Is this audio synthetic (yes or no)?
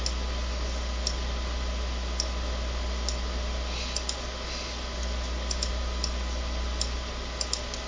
no